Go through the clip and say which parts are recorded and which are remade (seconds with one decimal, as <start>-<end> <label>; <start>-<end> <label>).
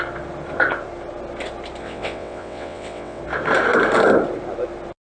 0.0-1.8 recorded; 1.8-3.2 remade; 3.2-5.0 recorded